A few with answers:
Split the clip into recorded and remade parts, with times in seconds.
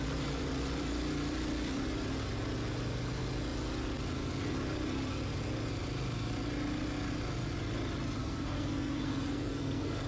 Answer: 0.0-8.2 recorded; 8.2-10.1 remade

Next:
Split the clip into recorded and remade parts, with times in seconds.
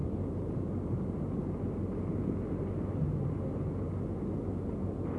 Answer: 0.0-5.2 recorded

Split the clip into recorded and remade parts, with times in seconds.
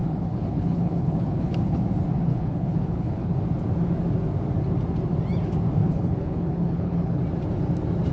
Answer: 0.0-1.8 remade; 1.8-2.3 recorded; 2.3-3.4 remade; 3.4-5.8 recorded; 5.8-7.2 remade; 7.2-8.1 recorded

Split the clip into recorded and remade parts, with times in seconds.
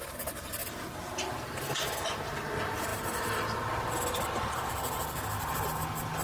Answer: 0.0-6.2 recorded